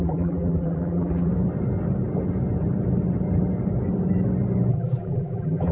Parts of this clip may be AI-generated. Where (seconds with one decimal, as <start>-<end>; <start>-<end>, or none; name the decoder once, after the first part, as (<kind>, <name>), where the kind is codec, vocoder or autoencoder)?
0.0-1.3 (vocoder, BigVGAN v2); 4.7-5.7